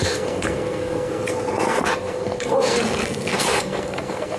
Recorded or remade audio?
remade